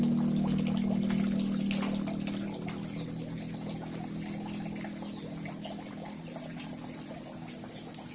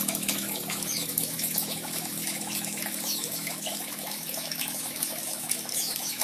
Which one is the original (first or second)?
first